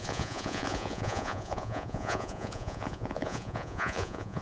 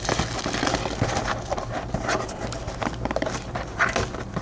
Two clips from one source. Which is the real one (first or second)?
second